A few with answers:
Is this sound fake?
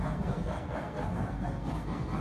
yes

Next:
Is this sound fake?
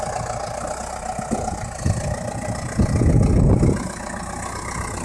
no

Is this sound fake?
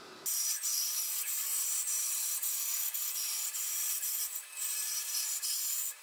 no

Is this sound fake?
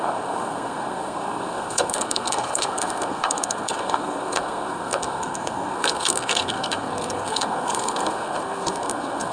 yes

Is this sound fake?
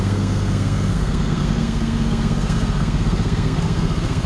yes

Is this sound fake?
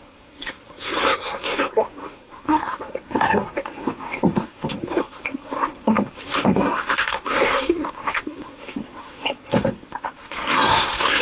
yes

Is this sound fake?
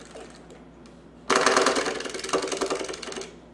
no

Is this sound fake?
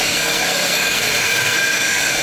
yes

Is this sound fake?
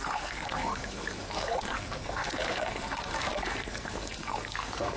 yes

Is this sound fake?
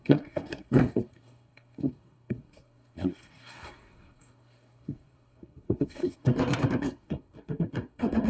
yes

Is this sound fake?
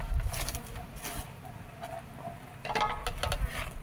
no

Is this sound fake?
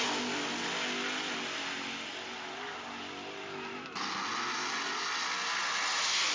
no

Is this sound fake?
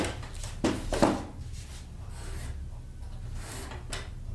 no